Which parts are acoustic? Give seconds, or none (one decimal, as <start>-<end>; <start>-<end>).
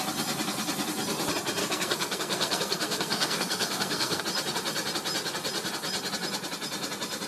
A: 0.0-1.6; 4.2-7.3